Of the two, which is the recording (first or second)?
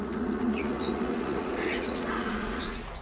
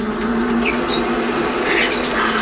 second